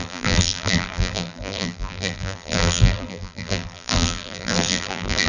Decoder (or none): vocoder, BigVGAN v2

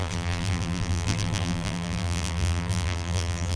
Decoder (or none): vocoder, BigVGAN v2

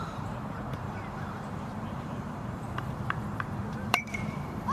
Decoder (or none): vocoder, BigVGAN v2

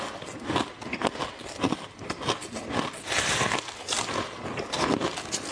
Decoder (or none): none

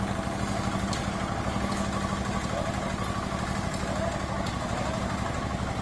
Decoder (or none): none